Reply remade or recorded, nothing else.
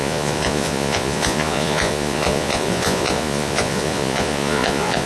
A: remade